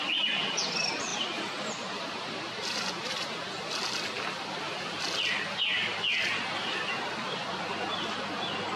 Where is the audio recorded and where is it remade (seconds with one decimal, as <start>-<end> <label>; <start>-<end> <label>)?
0.0-1.1 recorded; 1.1-2.9 remade; 2.9-8.8 recorded